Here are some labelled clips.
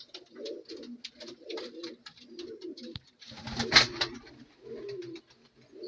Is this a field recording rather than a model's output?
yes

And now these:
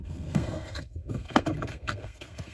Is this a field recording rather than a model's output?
no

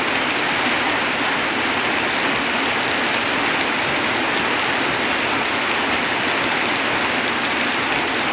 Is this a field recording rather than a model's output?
yes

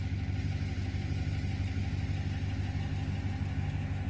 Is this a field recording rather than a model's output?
yes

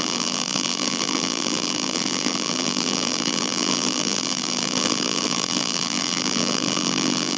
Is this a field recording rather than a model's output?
no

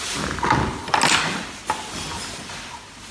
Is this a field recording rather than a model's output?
yes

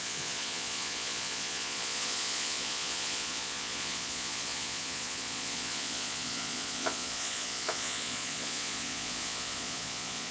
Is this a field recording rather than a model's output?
no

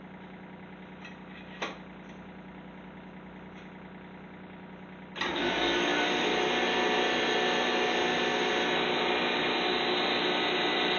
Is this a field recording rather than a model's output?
yes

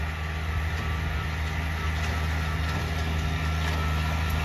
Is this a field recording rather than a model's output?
yes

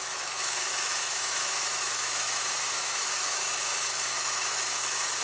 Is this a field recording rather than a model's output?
no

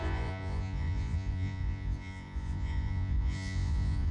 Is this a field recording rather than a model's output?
no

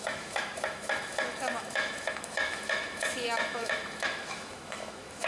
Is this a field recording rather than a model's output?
no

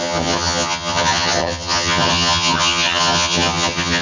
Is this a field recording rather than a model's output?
no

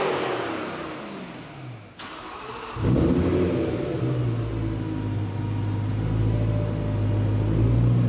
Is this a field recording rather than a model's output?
yes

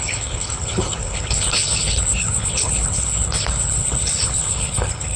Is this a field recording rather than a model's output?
no